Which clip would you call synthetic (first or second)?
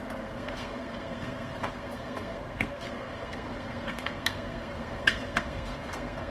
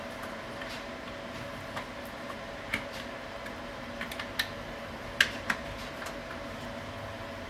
first